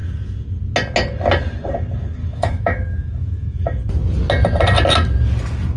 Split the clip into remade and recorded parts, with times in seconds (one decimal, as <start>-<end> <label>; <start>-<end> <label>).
0.0-2.2 recorded; 2.2-3.6 remade; 3.6-5.8 recorded